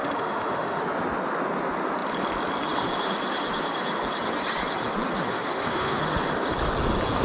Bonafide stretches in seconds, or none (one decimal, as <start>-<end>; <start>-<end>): 0.8-5.3; 6.0-7.2